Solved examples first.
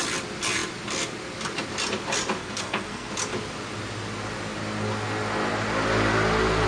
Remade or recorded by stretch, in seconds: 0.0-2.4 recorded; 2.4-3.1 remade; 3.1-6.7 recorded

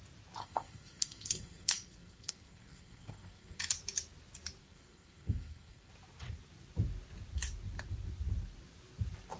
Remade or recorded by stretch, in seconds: 0.0-0.4 recorded; 0.4-3.6 remade; 3.6-4.6 recorded; 4.6-5.9 remade; 5.9-9.4 recorded

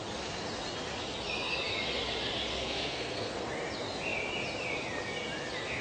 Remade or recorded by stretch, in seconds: 0.0-2.5 recorded; 2.5-3.5 remade; 3.5-5.8 recorded